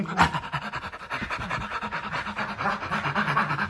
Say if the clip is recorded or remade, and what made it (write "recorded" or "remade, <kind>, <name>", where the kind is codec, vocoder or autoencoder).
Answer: recorded